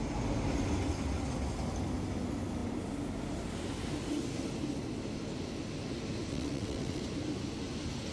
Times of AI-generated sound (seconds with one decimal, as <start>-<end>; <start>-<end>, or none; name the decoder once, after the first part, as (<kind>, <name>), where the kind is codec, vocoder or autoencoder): 6.3-7.0 (vocoder, WaveNeXt)